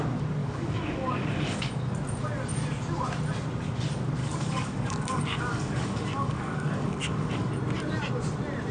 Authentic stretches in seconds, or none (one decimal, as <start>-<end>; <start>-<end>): 0.0-0.4; 1.7-4.2; 7.5-8.7